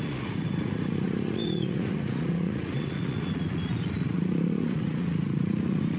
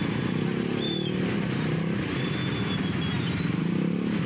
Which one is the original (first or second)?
second